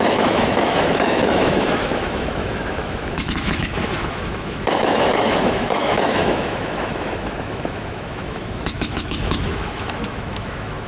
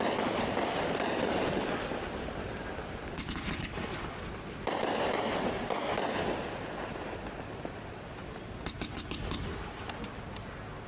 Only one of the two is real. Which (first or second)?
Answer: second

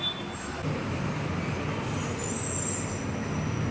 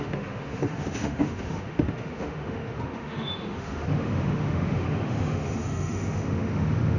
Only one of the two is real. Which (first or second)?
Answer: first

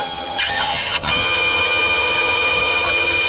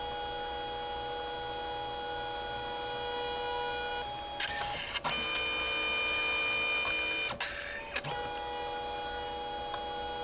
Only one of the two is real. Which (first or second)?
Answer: second